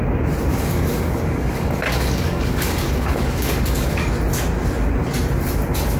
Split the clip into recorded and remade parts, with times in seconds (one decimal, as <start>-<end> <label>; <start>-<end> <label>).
0.0-0.5 recorded; 0.5-4.1 remade; 4.1-6.0 recorded